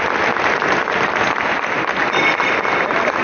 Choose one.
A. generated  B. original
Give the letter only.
B